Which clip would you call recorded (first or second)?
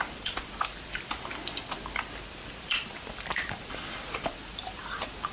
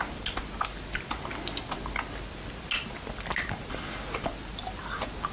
second